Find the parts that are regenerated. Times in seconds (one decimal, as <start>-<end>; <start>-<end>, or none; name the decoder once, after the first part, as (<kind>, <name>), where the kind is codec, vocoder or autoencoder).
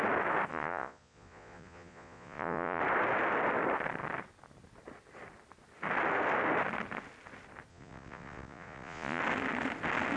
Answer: 0.5-2.8 (vocoder, Vocos); 7.7-9.2